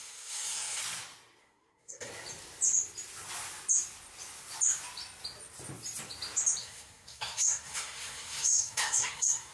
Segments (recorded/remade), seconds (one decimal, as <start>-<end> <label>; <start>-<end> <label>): 0.0-0.8 remade; 0.8-1.4 recorded; 1.4-2.1 remade; 2.1-6.6 recorded; 6.6-9.5 remade